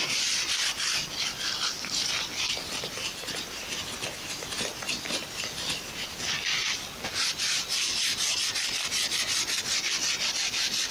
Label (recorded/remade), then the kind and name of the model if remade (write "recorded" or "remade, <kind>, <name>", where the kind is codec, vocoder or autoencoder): recorded